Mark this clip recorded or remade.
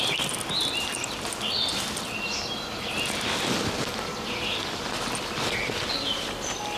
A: recorded